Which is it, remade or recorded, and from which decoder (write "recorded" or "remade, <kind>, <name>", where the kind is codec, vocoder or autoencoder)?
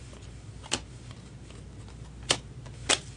recorded